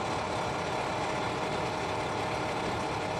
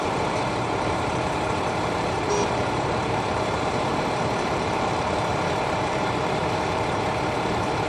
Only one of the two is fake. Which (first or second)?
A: second